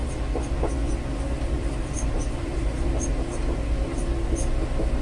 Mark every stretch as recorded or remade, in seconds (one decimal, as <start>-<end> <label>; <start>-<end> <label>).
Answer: 0.0-1.8 recorded; 1.8-4.4 remade; 4.4-5.0 recorded